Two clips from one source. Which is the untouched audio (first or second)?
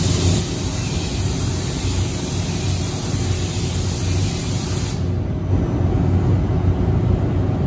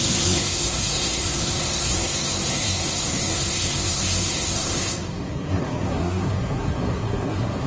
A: first